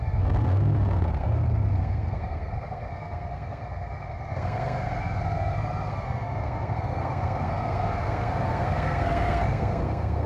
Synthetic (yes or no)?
yes